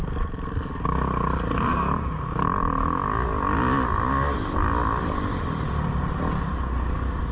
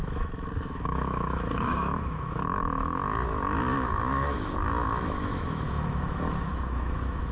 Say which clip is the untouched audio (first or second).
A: first